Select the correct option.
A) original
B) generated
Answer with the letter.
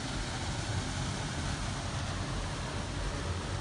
A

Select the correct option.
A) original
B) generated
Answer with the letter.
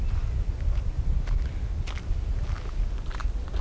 A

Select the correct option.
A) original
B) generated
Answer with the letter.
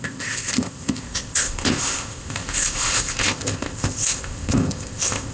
B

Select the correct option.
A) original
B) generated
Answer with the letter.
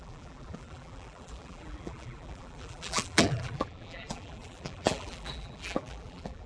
B